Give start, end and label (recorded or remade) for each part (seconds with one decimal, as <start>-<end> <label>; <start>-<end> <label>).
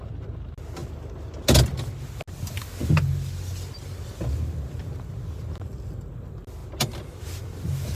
0.0-8.0 recorded